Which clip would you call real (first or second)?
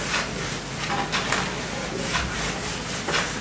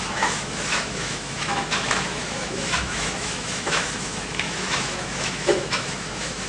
first